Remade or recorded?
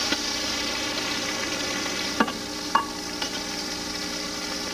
recorded